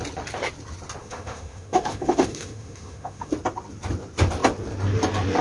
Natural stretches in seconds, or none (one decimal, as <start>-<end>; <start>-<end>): 0.0-1.0; 3.3-5.4